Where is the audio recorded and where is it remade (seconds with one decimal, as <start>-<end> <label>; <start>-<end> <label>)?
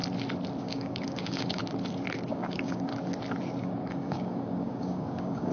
0.0-0.6 recorded; 0.6-1.6 remade; 1.6-2.3 recorded; 2.3-2.9 remade; 2.9-3.6 recorded; 3.6-5.5 remade